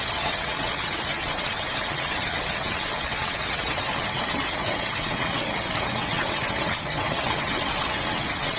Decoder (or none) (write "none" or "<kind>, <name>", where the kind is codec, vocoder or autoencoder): vocoder, WaveNeXt